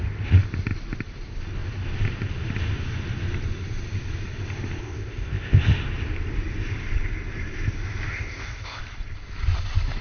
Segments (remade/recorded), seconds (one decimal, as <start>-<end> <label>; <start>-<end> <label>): 0.0-4.8 recorded; 4.8-5.6 remade; 5.6-8.1 recorded; 8.1-8.8 remade; 8.8-10.0 recorded